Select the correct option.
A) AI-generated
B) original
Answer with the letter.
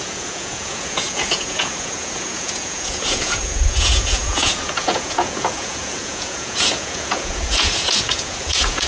A